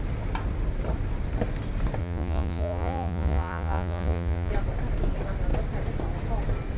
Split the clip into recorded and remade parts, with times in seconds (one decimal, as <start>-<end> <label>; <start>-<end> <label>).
0.0-2.0 recorded; 2.0-4.5 remade; 4.5-6.8 recorded